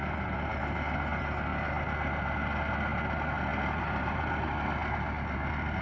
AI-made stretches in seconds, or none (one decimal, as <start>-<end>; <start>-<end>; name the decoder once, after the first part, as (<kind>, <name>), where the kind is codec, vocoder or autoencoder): none

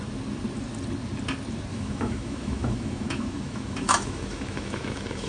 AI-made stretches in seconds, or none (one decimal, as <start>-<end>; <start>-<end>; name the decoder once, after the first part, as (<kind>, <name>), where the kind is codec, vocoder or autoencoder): 1.7-5.3 (autoencoder, DAC-VAE)

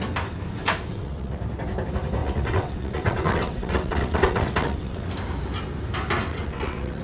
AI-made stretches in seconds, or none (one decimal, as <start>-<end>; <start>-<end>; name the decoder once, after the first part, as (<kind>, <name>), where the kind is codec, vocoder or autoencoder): 0.9-1.4 (vocoder, WaveNeXt); 2.2-5.1; 6.3-7.0

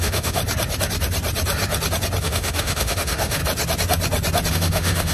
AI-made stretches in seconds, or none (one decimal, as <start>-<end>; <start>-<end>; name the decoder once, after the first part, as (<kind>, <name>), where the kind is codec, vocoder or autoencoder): 0.0-0.4 (autoencoder, DAC-VAE); 2.2-3.4; 4.5-5.1

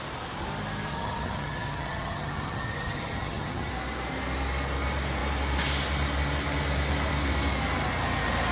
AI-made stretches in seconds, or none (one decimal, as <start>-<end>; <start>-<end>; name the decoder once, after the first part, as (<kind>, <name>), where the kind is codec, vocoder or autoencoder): 0.9-3.7 (vocoder, HiFi-GAN)